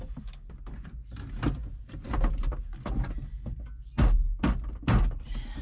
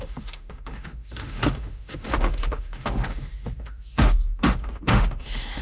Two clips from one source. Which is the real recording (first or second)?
first